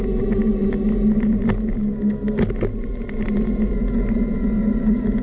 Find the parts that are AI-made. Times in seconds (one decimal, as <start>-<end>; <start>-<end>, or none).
none